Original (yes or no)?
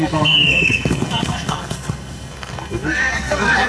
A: no